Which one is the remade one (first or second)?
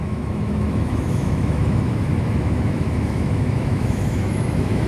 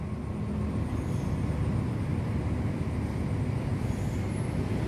first